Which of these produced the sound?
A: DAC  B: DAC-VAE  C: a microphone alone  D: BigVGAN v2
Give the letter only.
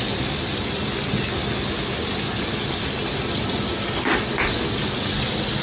C